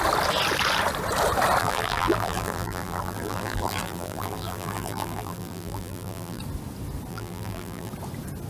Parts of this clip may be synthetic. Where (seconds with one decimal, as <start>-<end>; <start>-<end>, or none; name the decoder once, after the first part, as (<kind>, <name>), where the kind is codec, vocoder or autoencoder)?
1.6-6.4 (vocoder, BigVGAN v2); 7.1-7.9